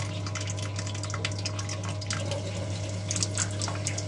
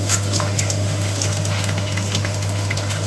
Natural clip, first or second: first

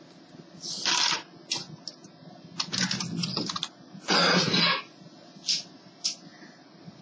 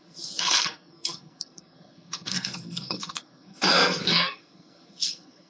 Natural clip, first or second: first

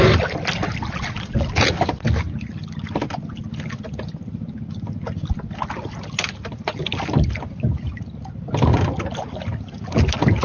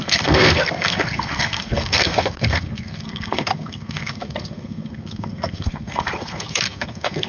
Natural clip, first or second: first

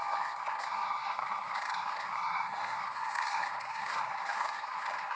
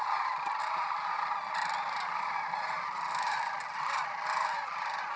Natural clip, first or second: second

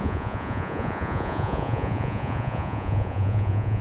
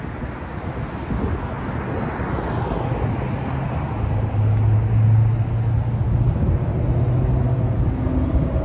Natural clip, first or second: second